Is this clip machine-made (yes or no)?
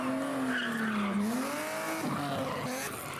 no